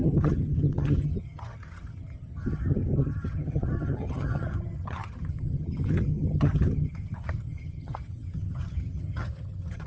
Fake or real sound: fake